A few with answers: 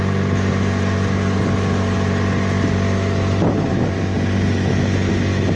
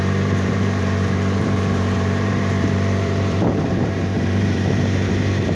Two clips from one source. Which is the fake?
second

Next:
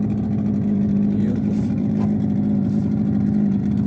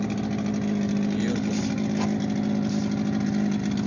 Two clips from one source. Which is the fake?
first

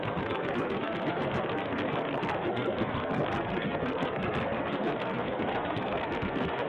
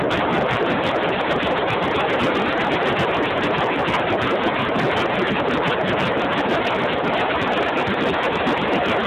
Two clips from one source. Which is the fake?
first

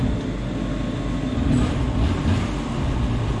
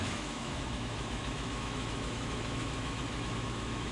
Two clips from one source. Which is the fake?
second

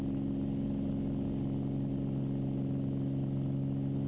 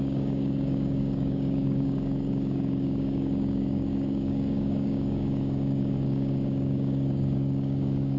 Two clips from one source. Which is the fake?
second